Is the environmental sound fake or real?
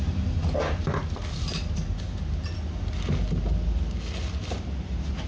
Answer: real